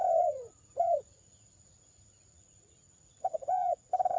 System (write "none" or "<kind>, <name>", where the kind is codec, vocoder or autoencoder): vocoder, Vocos